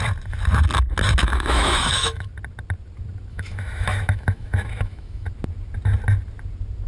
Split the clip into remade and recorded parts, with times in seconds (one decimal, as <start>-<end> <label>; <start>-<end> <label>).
0.0-1.2 recorded; 1.2-2.3 remade; 2.3-3.3 recorded; 3.3-5.3 remade; 5.3-6.9 recorded